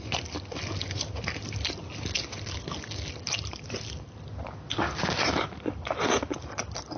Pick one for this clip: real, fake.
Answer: real